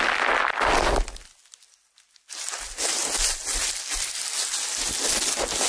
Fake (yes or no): no